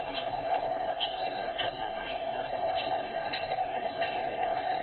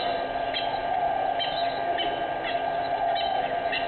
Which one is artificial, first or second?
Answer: first